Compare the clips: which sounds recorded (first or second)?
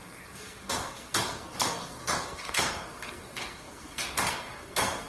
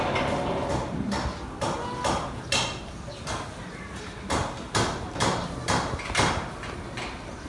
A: second